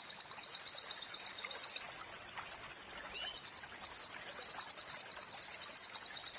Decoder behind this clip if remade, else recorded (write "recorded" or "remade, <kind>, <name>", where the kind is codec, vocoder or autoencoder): recorded